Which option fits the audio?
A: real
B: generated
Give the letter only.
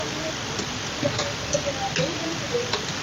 A